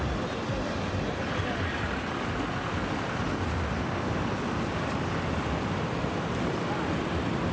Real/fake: real